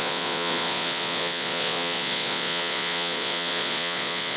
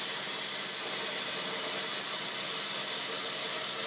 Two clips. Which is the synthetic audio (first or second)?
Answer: first